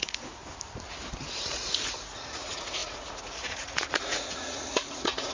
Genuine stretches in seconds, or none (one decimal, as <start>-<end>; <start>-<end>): 0.4-1.4